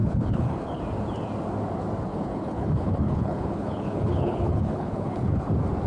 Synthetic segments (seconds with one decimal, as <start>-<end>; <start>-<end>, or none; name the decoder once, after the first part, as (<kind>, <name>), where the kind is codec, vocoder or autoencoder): 0.0-0.8 (codec, HILCodec); 2.1-5.5